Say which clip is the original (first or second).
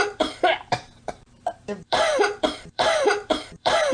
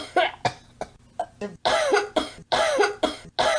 second